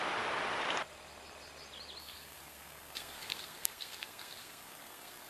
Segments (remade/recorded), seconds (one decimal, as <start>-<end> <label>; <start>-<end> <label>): 0.0-2.0 recorded; 2.0-5.3 remade